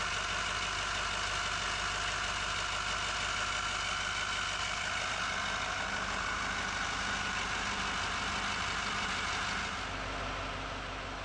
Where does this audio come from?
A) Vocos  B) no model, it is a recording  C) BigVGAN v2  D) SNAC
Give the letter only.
B